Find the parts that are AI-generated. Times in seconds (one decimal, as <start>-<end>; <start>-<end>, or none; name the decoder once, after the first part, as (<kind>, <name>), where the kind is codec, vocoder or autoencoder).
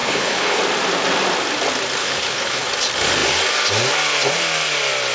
0.0-0.6 (codec, HILCodec); 2.0-2.7